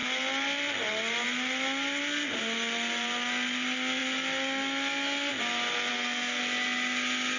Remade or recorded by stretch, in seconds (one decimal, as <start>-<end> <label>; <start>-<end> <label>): 0.0-5.9 recorded; 5.9-6.4 remade; 6.4-7.4 recorded